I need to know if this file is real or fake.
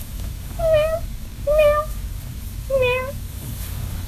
fake